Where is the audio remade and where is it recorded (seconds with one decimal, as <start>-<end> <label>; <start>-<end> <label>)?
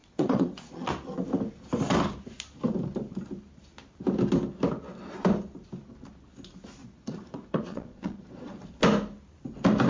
0.0-0.9 remade; 0.9-6.8 recorded; 6.8-8.7 remade; 8.7-9.9 recorded